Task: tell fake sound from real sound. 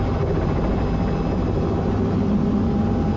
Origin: real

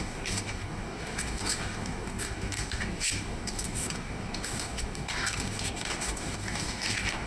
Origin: fake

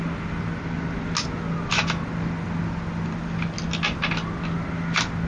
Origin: real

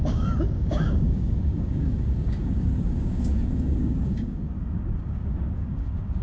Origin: fake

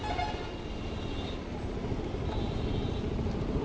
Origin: real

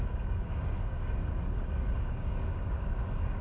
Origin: fake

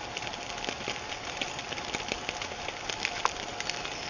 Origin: real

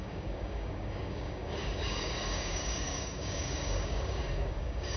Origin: fake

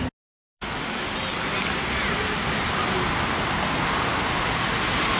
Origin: real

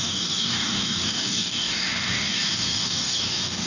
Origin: fake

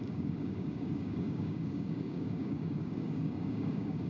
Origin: fake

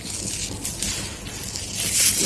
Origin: real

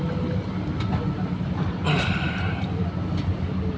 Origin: real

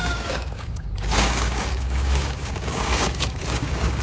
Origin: fake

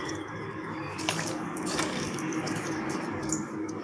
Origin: fake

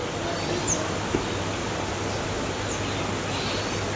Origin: real